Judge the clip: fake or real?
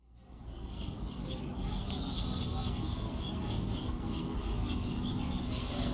fake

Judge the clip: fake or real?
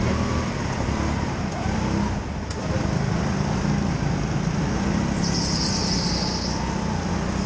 real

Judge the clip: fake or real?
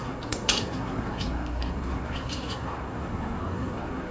fake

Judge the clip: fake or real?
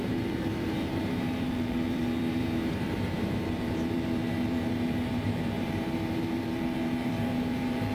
fake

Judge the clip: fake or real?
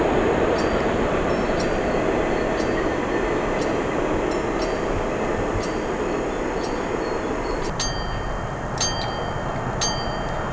real